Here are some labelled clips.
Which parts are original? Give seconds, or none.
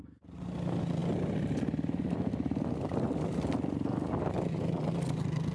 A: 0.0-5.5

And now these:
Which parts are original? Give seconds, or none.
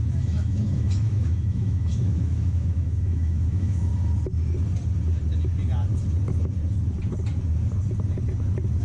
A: 3.9-8.8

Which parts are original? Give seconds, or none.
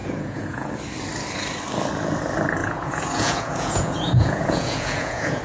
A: 0.7-2.6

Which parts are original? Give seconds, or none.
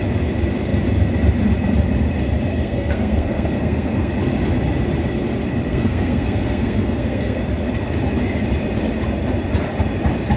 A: 0.0-2.5; 4.1-5.7; 7.4-10.4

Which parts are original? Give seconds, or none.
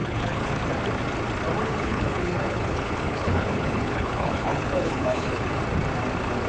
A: 0.5-1.6; 5.5-6.5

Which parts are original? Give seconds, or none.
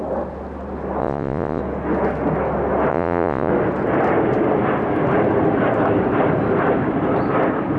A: 0.0-1.0; 1.6-2.9; 3.5-7.8